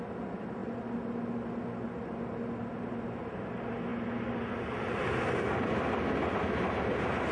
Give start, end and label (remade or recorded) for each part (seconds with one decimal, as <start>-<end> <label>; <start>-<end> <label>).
0.0-7.3 recorded